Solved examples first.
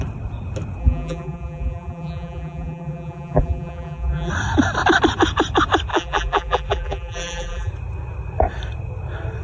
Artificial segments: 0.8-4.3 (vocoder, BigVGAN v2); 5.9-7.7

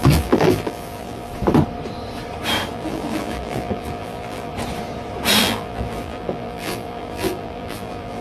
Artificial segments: 0.0-1.3 (vocoder, BigVGAN v2); 2.7-4.5; 5.4-8.2

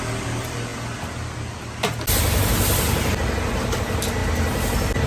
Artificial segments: none

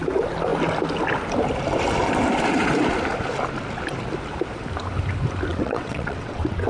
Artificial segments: 5.5-6.7 (vocoder, WaveNeXt)

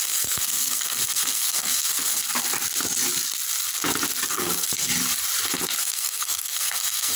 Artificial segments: 0.0-2.2 (codec, SNAC); 4.3-4.9; 5.8-7.2

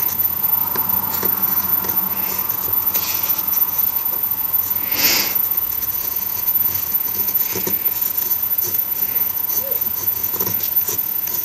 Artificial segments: 0.0-11.4 (vocoder, Vocos)